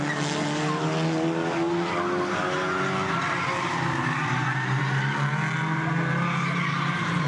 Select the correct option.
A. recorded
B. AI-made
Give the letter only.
A